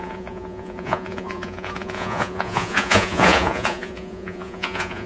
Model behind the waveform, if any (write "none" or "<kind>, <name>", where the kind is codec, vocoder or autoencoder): vocoder, Vocos